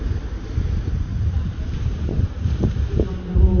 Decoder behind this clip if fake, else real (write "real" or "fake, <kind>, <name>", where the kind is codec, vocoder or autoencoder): fake, vocoder, BigVGAN v2